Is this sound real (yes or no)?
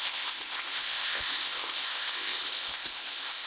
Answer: no